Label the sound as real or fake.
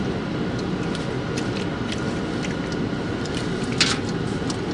real